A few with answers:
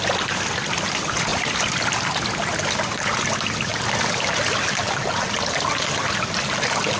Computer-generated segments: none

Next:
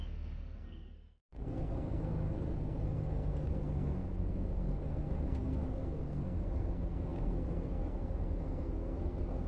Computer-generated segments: 0.0-9.5 (codec, SNAC)

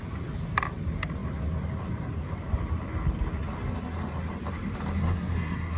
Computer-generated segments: 5.0-5.8 (codec, SNAC)

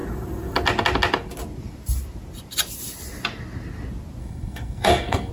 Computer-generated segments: 4.2-5.3 (codec, SNAC)

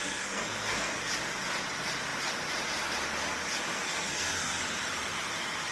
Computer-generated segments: 0.0-1.0 (codec, SNAC); 3.7-4.6

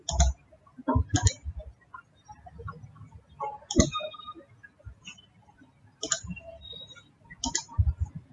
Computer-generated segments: none

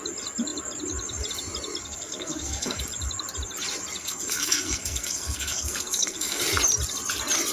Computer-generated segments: 1.8-2.8 (codec, SNAC); 4.0-6.4